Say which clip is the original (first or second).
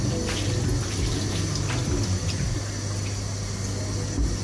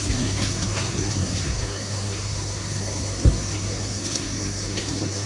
first